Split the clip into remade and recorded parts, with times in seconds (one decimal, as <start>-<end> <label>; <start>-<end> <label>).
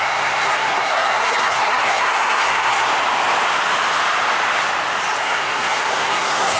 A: 0.0-2.9 remade; 2.9-5.2 recorded; 5.2-6.6 remade